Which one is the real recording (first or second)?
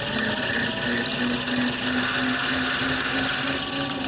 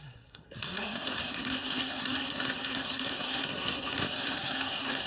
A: first